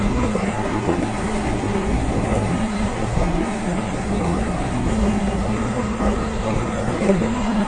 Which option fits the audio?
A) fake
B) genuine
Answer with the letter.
A